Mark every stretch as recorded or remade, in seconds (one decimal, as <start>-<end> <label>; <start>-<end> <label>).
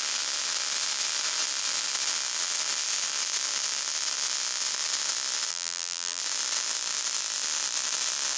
0.0-5.5 recorded; 5.5-6.2 remade; 6.2-8.4 recorded